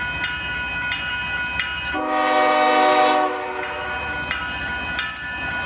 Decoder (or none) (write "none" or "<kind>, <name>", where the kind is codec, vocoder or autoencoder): none